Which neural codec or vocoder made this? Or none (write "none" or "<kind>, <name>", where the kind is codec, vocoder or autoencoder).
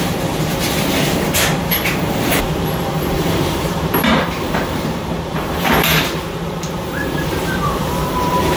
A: vocoder, BigVGAN v2